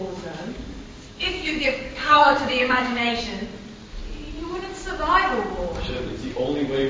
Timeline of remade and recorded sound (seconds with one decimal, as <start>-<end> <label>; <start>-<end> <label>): 0.0-3.2 remade; 3.2-6.9 recorded